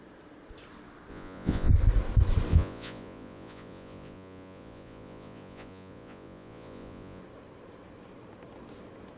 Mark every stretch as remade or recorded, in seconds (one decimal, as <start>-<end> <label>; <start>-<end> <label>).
0.0-1.1 recorded; 1.1-1.7 remade; 1.7-2.5 recorded; 2.5-7.2 remade; 7.2-9.2 recorded